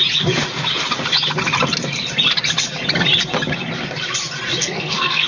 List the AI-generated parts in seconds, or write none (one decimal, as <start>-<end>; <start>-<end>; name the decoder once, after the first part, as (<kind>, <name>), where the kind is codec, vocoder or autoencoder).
4.6-5.3 (codec, SNAC)